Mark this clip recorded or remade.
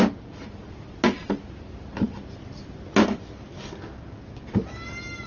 recorded